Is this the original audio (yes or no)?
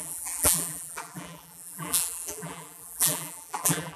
no